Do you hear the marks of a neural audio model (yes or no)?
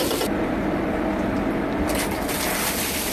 yes